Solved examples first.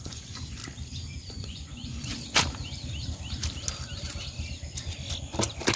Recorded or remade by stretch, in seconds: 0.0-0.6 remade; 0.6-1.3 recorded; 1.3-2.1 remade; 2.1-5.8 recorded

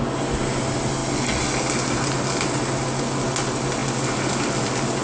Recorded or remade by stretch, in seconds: 0.0-5.0 recorded

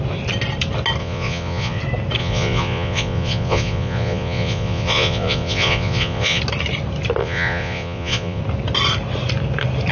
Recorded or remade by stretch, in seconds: 0.0-1.0 recorded; 1.0-1.8 remade; 1.8-2.2 recorded; 2.2-6.4 remade; 6.4-7.2 recorded; 7.2-8.4 remade; 8.4-9.9 recorded

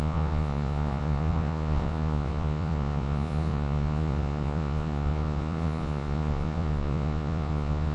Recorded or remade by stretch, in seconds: 0.0-7.9 remade

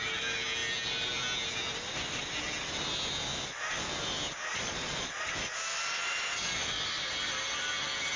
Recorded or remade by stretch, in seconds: 0.0-4.5 recorded; 4.5-5.3 remade; 5.3-8.2 recorded

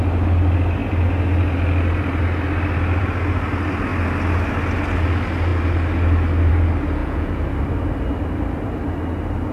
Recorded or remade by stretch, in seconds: 0.0-7.0 recorded; 7.0-7.5 remade; 7.5-9.5 recorded

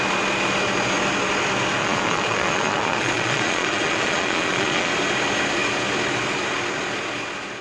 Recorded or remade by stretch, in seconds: 0.0-1.8 recorded; 1.8-4.9 remade; 4.9-7.6 recorded

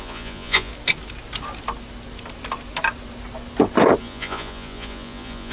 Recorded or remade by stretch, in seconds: 0.0-0.7 remade; 0.7-4.0 recorded; 4.0-5.5 remade